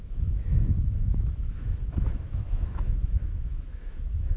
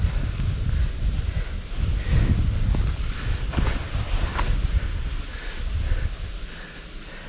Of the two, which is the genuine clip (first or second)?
second